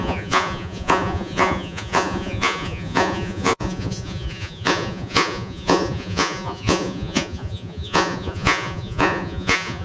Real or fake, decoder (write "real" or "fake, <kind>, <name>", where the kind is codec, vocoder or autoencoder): fake, vocoder, Vocos